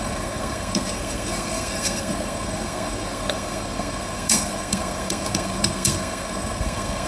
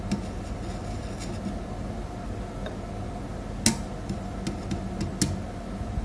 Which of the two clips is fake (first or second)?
first